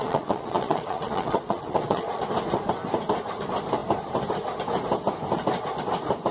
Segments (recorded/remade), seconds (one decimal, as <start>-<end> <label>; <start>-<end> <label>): 0.0-2.2 remade; 2.2-6.3 recorded